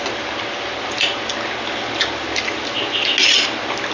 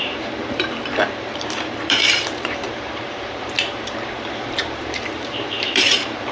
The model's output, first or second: second